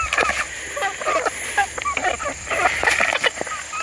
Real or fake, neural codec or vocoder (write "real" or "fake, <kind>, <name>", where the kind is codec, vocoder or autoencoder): real